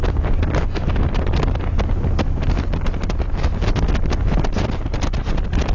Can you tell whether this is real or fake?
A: real